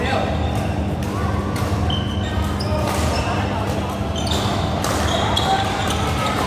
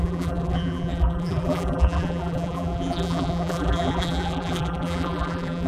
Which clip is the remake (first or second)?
second